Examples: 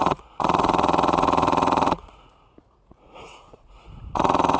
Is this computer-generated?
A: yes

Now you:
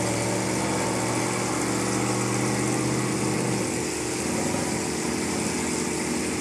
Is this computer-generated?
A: no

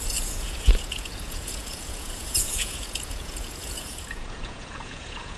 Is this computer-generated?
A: yes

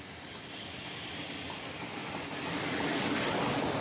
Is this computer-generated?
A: no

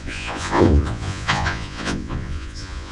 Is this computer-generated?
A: yes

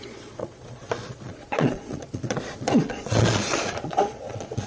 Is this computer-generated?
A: yes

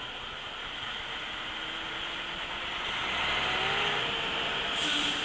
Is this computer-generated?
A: no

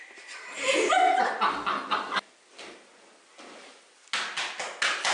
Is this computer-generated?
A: no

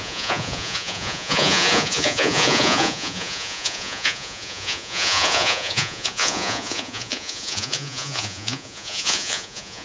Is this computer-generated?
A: yes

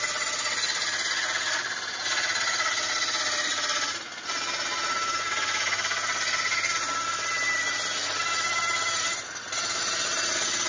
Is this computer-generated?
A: no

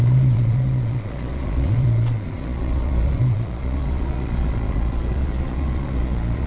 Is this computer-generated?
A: yes